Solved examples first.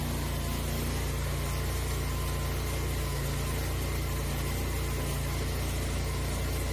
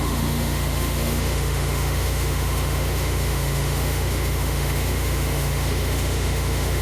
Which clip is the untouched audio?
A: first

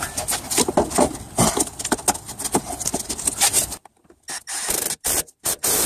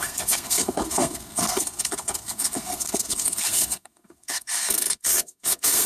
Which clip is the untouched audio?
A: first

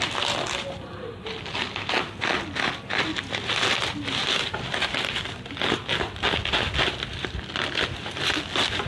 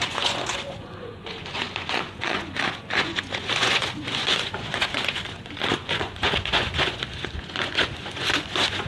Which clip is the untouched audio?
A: first